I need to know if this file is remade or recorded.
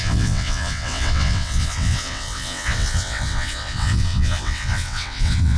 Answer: remade